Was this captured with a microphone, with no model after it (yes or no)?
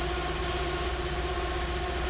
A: yes